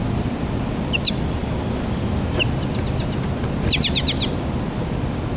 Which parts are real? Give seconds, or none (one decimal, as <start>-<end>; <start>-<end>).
0.0-5.4